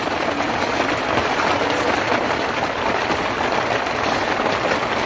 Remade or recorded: recorded